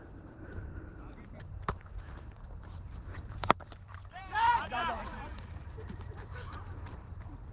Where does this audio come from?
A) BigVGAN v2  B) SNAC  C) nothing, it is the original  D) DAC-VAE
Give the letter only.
A